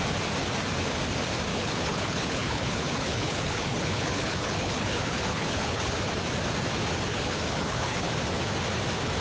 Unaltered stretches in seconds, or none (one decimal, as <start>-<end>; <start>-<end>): 0.0-1.5; 6.1-7.1; 8.1-9.2